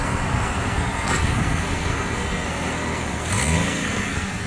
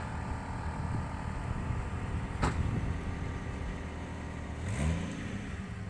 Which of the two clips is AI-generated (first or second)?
first